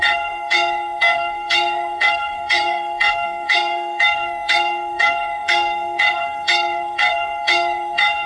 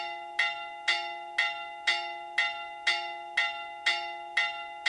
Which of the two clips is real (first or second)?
second